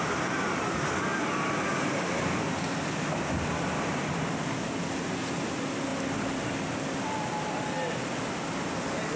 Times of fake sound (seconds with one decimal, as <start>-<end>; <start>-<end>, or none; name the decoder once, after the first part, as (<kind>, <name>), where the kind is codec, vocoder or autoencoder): none